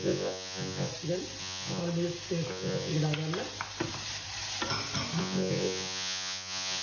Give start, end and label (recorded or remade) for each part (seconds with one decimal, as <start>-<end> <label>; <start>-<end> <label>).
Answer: 0.0-0.9 remade; 0.9-1.4 recorded; 1.4-1.8 remade; 1.8-2.5 recorded; 2.5-2.9 remade; 2.9-5.2 recorded; 5.2-6.8 remade